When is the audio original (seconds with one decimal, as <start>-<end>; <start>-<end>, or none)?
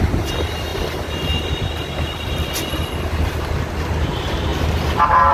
0.0-5.3